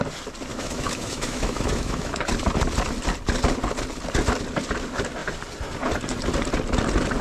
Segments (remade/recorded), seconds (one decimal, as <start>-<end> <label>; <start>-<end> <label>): 0.0-0.5 recorded; 0.5-2.3 remade; 2.3-7.2 recorded